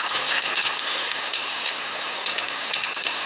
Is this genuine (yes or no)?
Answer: no